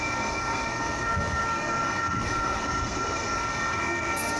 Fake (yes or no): yes